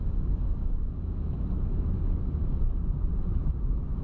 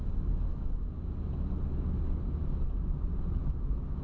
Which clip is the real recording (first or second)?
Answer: second